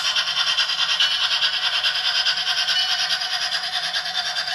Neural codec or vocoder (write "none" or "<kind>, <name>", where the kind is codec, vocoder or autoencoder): none